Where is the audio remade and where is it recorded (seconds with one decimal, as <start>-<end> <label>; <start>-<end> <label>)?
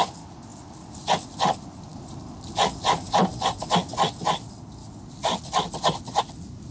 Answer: 0.0-6.7 recorded